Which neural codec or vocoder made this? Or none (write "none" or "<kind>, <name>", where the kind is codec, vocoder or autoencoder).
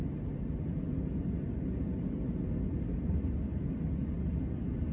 none